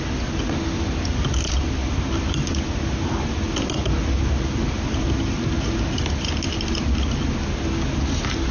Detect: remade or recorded recorded